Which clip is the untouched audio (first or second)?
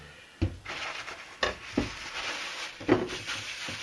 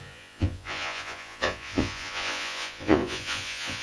first